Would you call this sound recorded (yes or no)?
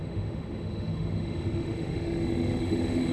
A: no